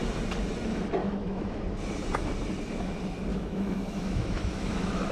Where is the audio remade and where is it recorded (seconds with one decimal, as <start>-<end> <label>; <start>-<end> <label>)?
0.0-1.0 recorded; 1.0-1.6 remade; 1.6-3.3 recorded; 3.3-5.1 remade